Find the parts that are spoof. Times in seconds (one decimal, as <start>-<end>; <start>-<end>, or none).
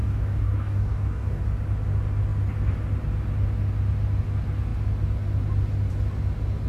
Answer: 0.0-1.4